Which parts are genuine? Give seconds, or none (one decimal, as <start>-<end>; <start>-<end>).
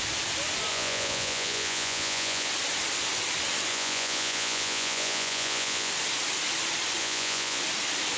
0.0-0.7; 2.5-3.7; 5.9-7.0; 7.6-8.2